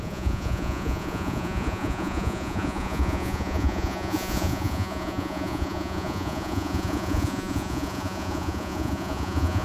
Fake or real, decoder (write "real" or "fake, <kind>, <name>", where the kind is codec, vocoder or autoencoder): fake, vocoder, Vocos